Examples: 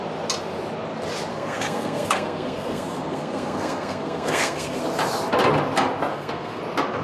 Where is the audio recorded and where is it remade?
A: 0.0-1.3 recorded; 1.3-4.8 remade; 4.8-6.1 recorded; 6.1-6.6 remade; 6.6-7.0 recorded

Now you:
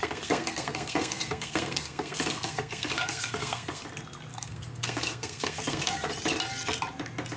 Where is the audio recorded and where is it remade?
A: 0.0-3.8 remade; 3.8-4.3 recorded; 4.3-6.1 remade; 6.1-7.4 recorded

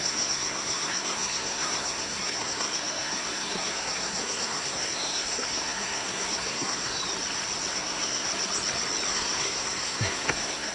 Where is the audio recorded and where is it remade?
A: 0.0-7.0 remade; 7.0-7.7 recorded; 7.7-8.3 remade; 8.3-9.1 recorded; 9.1-10.7 remade